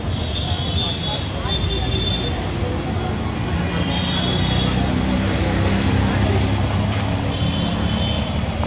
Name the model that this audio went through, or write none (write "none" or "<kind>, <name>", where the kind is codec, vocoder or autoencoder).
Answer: none